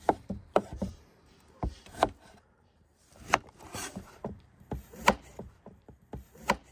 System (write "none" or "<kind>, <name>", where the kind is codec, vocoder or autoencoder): vocoder, BigVGAN v2